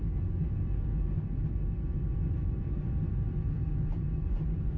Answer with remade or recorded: remade